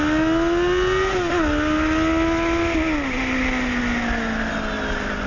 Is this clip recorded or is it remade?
recorded